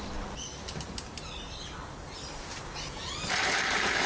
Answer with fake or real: real